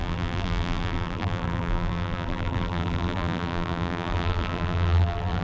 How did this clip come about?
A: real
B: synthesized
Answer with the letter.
B